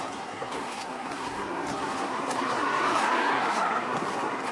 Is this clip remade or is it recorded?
remade